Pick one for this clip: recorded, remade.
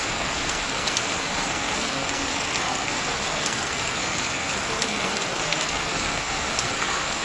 remade